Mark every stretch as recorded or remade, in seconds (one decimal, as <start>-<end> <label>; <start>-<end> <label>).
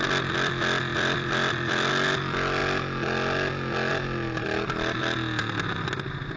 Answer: 0.0-0.9 recorded; 0.9-1.9 remade; 1.9-6.4 recorded